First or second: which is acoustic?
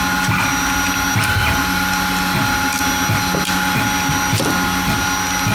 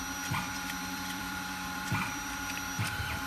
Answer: first